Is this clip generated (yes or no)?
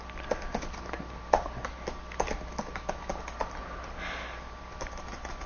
no